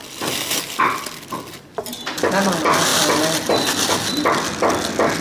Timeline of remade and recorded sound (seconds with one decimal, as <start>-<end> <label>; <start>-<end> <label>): 0.0-5.2 recorded

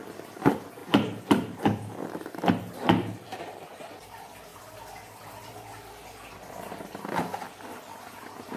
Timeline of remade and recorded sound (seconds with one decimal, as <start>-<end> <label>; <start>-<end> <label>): 0.0-0.8 remade; 0.8-2.7 recorded; 2.7-4.5 remade; 4.5-8.2 recorded; 8.2-8.6 remade

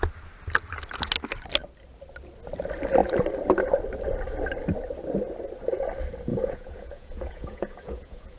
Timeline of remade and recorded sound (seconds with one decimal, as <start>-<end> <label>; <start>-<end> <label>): 0.0-6.3 recorded; 6.3-8.4 remade

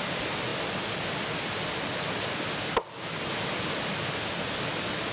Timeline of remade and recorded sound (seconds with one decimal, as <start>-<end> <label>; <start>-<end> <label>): 0.0-5.1 recorded

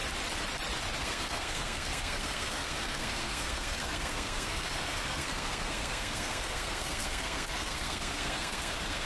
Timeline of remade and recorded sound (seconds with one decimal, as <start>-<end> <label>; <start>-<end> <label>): 0.0-1.0 recorded; 1.0-9.1 remade

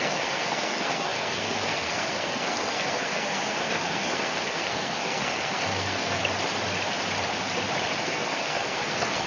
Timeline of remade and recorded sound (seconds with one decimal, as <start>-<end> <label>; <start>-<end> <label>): 0.0-6.2 remade; 6.2-8.0 recorded; 8.0-9.3 remade